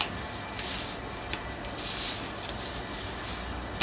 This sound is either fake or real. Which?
real